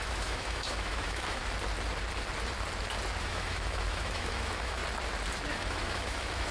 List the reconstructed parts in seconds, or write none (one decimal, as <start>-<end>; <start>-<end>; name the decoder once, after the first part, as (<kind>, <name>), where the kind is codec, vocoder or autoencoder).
0.0-1.4 (autoencoder, DAC-VAE); 3.2-4.8; 5.5-6.5

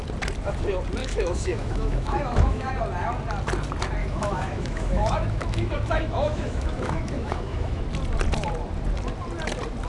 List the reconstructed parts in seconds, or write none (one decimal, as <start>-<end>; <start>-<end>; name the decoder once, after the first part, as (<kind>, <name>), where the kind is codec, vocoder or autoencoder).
1.0-2.7 (autoencoder, DAC-VAE); 4.0-7.8